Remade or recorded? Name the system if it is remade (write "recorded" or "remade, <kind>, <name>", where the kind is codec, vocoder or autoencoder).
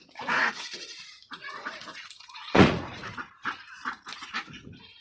remade, vocoder, Vocos